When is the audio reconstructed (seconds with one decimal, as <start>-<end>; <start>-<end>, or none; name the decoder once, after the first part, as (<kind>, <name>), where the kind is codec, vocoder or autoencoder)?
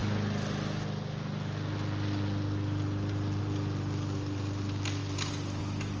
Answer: none